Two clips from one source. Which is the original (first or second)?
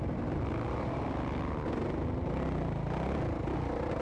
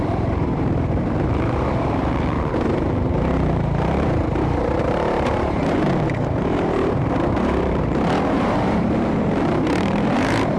first